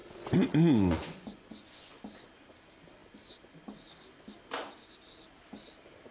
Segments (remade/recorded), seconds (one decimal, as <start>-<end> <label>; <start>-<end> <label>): 0.0-2.0 remade; 2.0-6.1 recorded